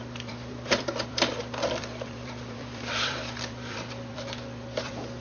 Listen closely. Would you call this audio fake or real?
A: fake